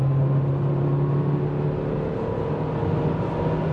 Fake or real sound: real